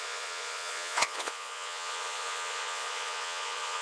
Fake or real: fake